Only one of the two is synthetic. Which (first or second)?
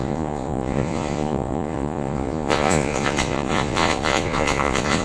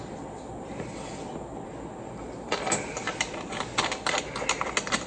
first